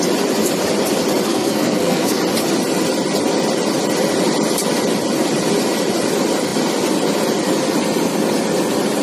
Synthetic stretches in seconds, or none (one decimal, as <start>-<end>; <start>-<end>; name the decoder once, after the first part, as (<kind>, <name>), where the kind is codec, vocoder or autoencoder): 1.3-2.2 (codec, SNAC)